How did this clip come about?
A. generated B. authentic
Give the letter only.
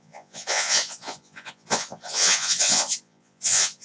A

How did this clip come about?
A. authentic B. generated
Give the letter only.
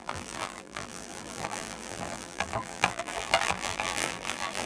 B